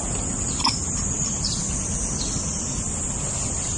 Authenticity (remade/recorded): recorded